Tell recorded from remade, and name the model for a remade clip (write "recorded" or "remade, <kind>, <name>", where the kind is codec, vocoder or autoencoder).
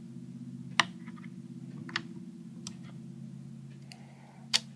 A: recorded